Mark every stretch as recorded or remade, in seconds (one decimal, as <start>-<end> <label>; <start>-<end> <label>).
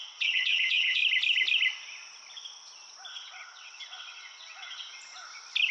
0.0-1.0 remade; 1.0-3.1 recorded; 3.1-4.9 remade; 4.9-5.7 recorded